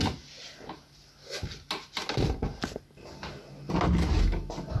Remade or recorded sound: recorded